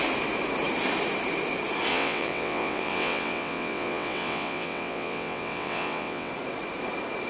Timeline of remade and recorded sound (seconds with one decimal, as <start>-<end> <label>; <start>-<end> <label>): 0.0-1.9 recorded; 1.9-6.3 remade; 6.3-7.3 recorded